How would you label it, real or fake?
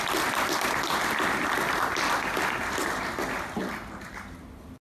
real